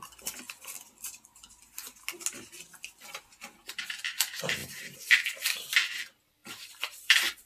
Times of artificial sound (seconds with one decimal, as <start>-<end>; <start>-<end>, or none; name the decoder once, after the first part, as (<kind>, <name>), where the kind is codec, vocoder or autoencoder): 4.6-5.2 (vocoder, BigVGAN v2); 6.4-7.5